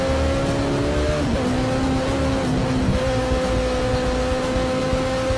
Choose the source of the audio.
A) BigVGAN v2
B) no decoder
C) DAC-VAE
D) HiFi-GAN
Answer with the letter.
B